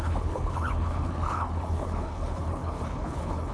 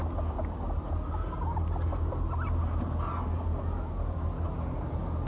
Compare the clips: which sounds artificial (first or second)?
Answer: first